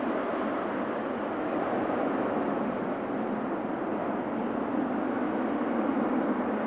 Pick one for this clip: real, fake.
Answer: real